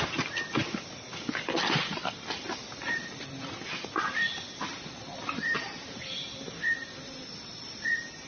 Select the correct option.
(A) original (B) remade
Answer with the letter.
A